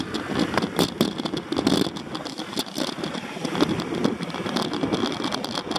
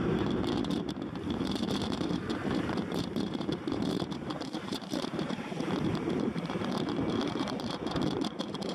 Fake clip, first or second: second